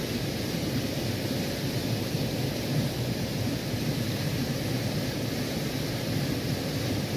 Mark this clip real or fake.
real